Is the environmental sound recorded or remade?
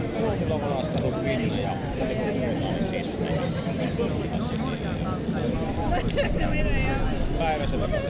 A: recorded